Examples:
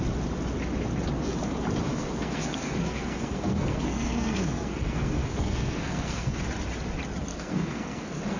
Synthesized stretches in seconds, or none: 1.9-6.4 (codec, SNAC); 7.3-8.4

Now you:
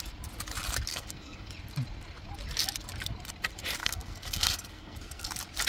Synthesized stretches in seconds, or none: 0.9-1.5 (codec, SNAC); 3.8-5.3

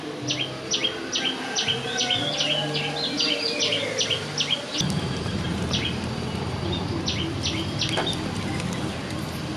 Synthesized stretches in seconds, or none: 4.7-7.0 (vocoder, BigVGAN v2)